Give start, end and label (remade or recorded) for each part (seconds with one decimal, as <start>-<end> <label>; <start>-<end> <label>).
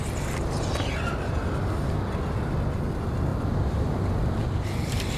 0.0-3.3 recorded; 3.3-4.0 remade; 4.0-4.4 recorded; 4.4-5.2 remade